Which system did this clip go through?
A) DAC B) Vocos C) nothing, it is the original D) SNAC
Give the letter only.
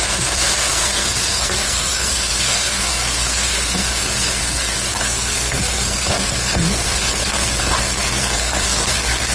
D